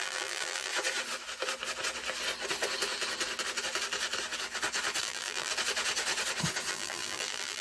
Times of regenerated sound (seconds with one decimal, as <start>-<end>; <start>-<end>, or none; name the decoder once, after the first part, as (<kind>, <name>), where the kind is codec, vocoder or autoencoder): 0.0-0.7 (vocoder, BigVGAN v2); 5.0-5.5; 6.7-7.6